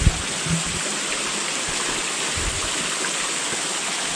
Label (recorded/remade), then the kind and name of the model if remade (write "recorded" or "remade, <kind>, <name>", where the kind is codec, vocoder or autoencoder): recorded